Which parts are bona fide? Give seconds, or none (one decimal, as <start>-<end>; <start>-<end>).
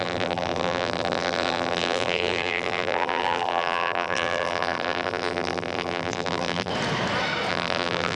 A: 6.7-7.5